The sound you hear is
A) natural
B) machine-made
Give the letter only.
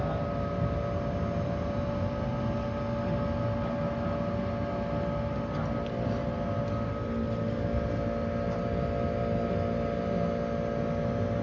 A